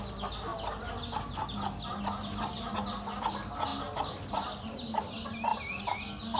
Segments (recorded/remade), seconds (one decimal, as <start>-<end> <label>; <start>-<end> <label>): 0.0-6.4 recorded